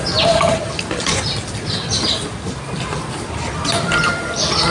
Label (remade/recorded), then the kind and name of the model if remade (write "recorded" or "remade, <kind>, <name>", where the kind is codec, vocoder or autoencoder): recorded